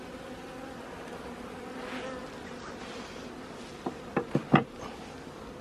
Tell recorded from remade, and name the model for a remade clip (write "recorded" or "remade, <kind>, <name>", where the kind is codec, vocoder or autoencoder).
recorded